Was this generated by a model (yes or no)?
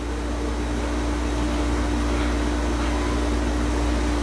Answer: no